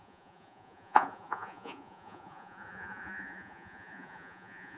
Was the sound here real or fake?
fake